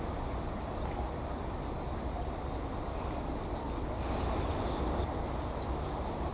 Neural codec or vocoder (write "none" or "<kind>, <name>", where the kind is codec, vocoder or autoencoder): none